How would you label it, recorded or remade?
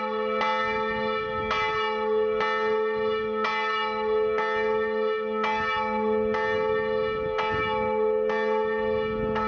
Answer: recorded